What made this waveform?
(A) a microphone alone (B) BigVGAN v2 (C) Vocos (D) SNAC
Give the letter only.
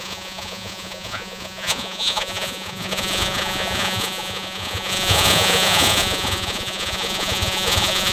C